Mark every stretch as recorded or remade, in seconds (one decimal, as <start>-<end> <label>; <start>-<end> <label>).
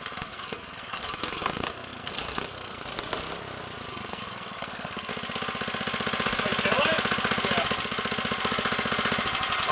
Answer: 0.0-2.9 remade; 2.9-3.9 recorded; 3.9-5.1 remade; 5.1-9.7 recorded